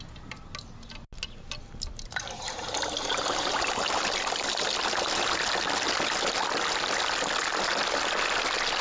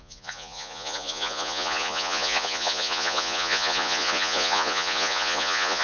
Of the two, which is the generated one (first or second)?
second